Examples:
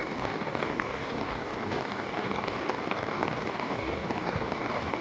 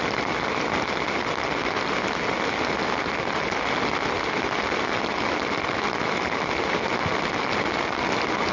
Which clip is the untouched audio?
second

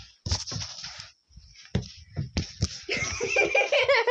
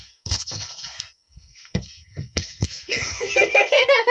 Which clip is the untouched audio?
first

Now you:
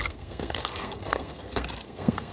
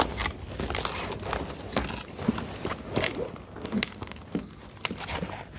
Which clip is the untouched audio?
second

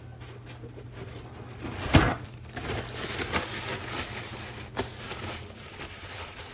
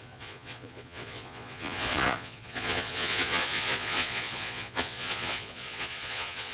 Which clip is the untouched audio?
first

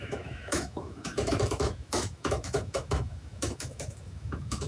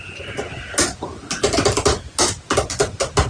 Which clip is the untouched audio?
second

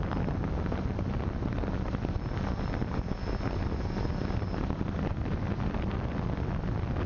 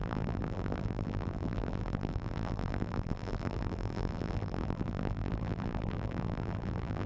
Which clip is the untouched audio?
first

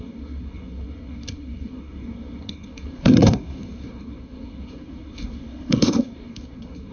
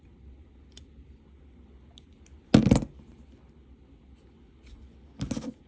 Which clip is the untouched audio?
second